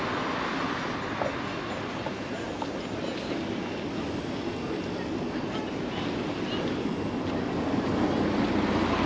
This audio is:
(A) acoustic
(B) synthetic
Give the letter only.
A